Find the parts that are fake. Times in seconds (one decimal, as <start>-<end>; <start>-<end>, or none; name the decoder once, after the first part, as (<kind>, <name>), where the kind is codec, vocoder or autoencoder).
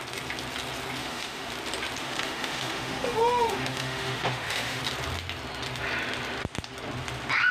1.0-1.5 (autoencoder, DAC-VAE); 2.0-4.8